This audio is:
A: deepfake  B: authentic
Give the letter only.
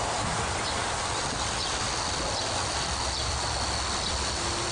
B